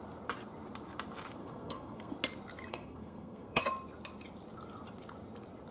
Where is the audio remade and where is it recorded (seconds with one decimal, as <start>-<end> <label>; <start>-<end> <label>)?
0.0-1.4 recorded; 1.4-2.1 remade; 2.1-2.7 recorded; 2.7-3.6 remade; 3.6-5.7 recorded